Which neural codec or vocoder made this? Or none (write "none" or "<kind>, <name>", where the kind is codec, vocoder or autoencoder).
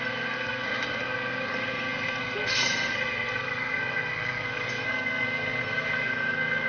codec, SNAC